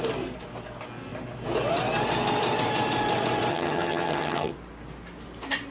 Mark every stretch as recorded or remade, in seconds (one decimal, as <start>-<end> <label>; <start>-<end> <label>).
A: 0.0-3.5 recorded; 3.5-4.5 remade; 4.5-5.7 recorded